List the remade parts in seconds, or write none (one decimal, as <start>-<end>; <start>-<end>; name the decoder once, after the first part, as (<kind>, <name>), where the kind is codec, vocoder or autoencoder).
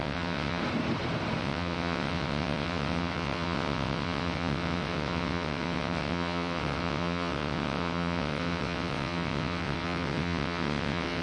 0.0-0.6 (vocoder, WaveNeXt); 1.4-11.2